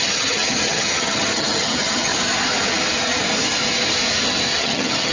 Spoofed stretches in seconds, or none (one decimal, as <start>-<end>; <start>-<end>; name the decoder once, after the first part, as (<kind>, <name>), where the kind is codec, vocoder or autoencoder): 0.0-2.1 (vocoder, HiFi-GAN); 4.6-5.1